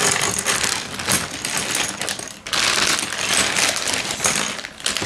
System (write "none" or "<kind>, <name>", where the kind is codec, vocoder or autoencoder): none